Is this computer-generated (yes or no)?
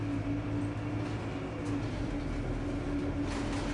no